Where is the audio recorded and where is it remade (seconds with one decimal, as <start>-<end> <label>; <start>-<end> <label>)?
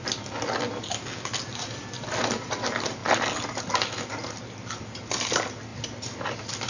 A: 0.0-6.7 recorded